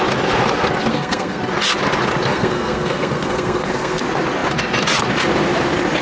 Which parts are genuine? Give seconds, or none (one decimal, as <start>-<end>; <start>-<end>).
0.0-0.9; 1.4-2.3; 4.0-6.0